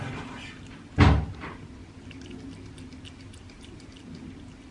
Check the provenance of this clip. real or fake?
real